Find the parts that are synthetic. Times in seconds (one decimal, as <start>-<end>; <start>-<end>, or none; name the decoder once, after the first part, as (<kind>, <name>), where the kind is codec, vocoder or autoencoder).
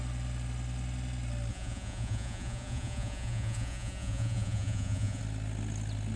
1.5-5.2 (vocoder, Vocos)